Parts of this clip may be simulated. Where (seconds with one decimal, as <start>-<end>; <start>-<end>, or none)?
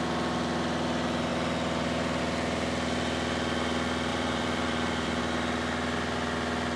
4.1-5.2